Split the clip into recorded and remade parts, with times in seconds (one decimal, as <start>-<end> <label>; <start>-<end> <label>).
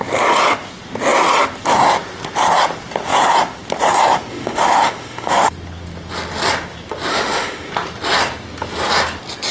0.0-4.3 recorded; 4.3-5.5 remade; 5.5-7.1 recorded; 7.1-7.7 remade; 7.7-9.5 recorded